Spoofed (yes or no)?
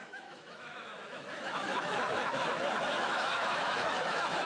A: yes